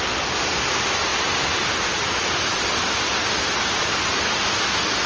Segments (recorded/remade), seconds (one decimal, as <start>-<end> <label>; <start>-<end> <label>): 0.0-5.1 recorded